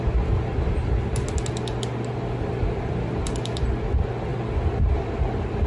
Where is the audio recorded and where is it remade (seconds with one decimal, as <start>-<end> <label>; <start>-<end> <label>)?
0.0-5.7 recorded